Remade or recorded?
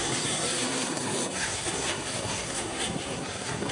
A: remade